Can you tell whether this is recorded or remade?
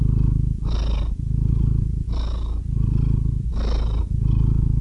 recorded